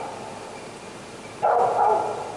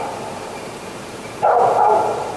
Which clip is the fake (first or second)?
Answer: second